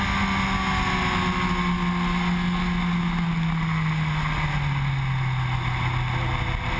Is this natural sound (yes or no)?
yes